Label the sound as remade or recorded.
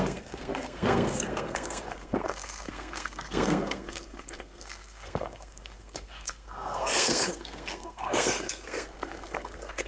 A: remade